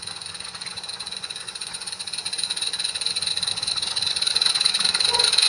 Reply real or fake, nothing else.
fake